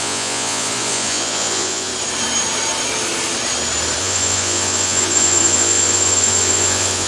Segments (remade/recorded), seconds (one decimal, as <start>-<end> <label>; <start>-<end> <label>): 0.0-1.9 remade; 1.9-4.0 recorded; 4.0-7.1 remade